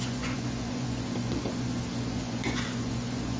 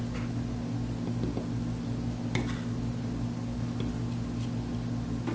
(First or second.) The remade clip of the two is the first